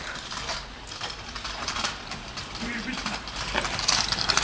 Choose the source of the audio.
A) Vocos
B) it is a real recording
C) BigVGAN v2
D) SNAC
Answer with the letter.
C